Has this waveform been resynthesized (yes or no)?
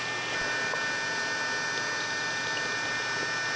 no